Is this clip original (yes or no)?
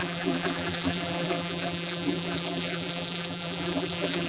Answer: no